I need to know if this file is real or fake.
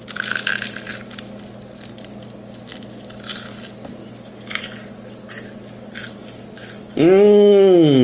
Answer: real